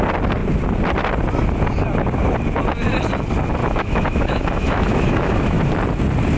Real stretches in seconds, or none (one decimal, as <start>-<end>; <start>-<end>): 0.0-3.6; 5.6-6.4